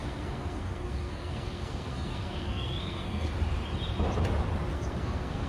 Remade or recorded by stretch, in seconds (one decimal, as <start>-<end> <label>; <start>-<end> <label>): 0.0-3.3 remade; 3.3-4.7 recorded; 4.7-5.5 remade